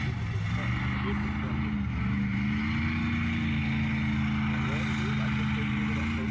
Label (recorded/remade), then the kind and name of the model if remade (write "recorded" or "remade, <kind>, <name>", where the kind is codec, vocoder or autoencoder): recorded